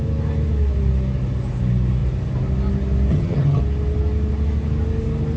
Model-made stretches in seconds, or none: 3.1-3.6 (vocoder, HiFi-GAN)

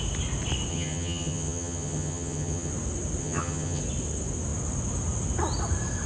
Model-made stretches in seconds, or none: 0.7-2.7 (vocoder, HiFi-GAN); 3.2-3.8

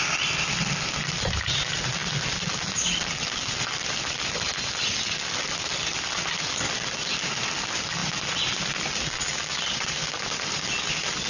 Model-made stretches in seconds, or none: none

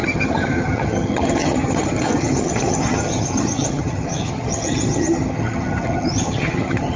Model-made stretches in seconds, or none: 0.0-7.0 (vocoder, HiFi-GAN)

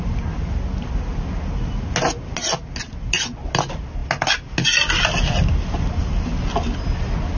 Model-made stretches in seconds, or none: none

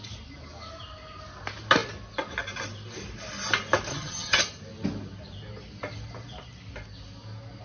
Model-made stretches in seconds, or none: 3.9-4.4 (vocoder, HiFi-GAN)

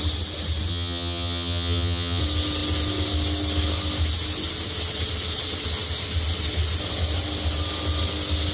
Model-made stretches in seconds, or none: 0.7-2.2 (vocoder, HiFi-GAN)